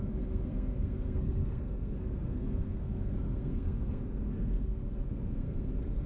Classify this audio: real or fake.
fake